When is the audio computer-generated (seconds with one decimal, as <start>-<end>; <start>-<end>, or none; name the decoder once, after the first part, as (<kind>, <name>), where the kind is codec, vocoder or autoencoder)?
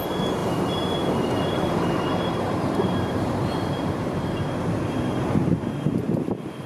0.4-4.4 (vocoder, BigVGAN v2)